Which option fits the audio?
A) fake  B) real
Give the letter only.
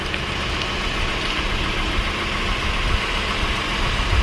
B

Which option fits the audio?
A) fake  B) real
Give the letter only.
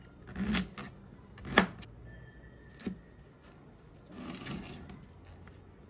B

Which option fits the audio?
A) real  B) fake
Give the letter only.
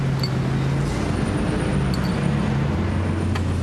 A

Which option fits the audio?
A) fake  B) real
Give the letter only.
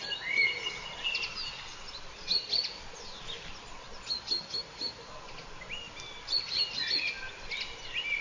B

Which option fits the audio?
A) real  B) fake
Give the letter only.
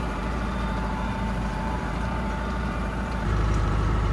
B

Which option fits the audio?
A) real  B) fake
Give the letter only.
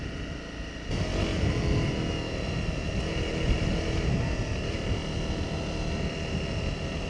A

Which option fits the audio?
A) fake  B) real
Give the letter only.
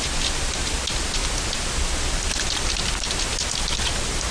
B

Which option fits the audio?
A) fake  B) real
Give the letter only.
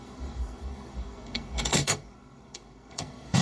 A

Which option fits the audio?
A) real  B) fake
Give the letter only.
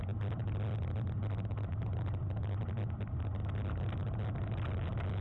A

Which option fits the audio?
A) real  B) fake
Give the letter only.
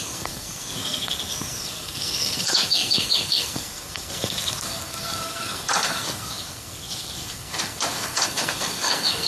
B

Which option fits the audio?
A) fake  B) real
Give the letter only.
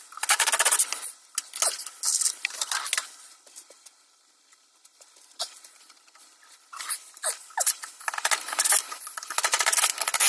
B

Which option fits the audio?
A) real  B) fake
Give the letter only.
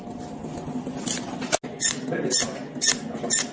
A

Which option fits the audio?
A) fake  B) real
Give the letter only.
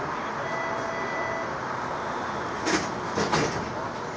B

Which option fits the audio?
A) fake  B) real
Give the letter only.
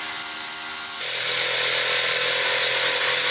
B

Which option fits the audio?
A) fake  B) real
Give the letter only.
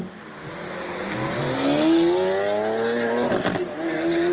B